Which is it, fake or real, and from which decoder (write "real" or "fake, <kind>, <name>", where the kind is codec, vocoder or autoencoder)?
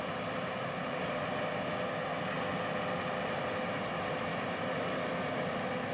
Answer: real